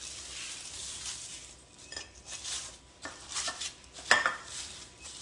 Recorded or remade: remade